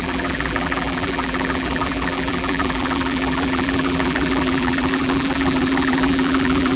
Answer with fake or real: fake